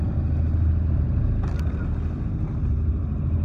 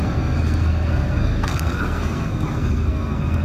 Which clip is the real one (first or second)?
first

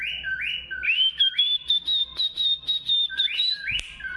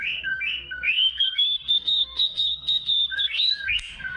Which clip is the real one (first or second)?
first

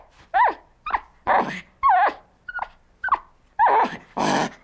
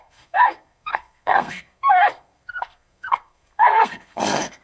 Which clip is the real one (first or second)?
first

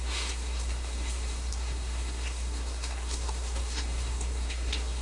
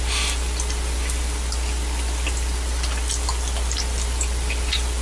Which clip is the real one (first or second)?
second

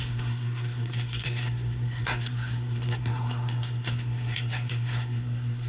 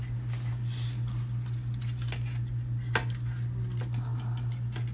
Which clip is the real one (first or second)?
second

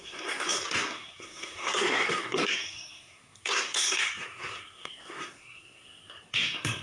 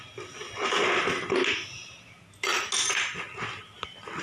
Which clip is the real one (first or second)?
second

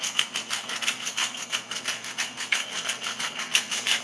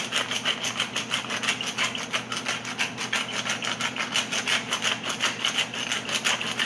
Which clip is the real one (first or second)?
second